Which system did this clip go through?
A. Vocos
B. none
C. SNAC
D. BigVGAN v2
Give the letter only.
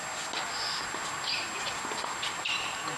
B